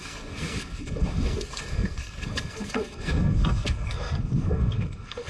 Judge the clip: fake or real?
fake